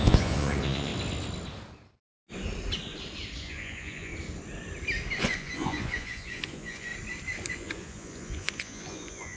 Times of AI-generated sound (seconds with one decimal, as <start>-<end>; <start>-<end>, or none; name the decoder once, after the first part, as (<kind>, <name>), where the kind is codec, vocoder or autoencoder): 0.0-0.9 (vocoder, Vocos); 3.4-4.1; 5.2-6.9; 7.5-9.4